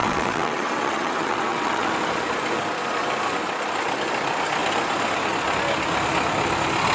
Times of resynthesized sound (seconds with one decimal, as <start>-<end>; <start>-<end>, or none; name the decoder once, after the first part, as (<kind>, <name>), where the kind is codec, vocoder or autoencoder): 0.0-1.9 (vocoder, WaveNeXt)